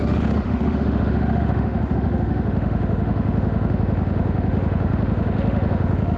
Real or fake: fake